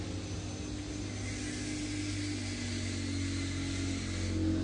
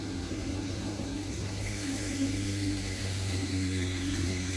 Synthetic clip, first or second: second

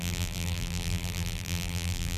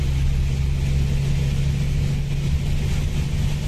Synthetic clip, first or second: first